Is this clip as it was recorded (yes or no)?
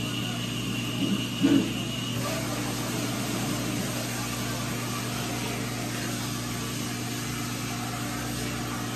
yes